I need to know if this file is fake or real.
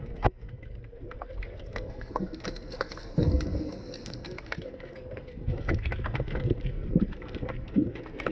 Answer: fake